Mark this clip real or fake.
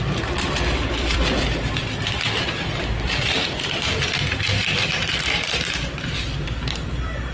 fake